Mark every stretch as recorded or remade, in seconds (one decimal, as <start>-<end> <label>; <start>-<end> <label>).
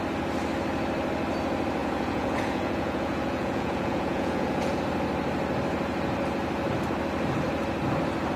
0.0-1.8 recorded; 1.8-4.8 remade; 4.8-8.4 recorded